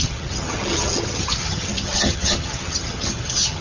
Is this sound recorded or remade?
remade